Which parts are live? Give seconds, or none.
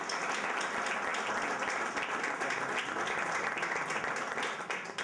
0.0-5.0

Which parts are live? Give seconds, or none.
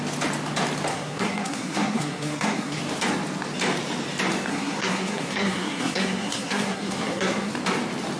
0.0-0.9; 2.8-4.5; 7.5-8.2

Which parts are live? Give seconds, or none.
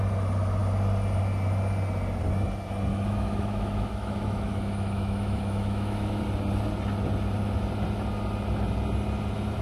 0.0-2.9; 6.2-9.6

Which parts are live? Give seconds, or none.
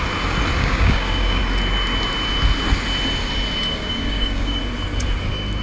0.0-0.6; 1.4-3.7; 4.6-5.6